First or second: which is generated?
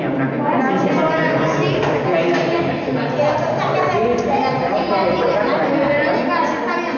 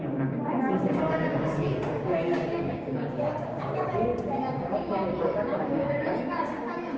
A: second